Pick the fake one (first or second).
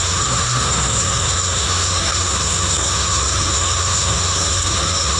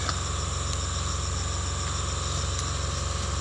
first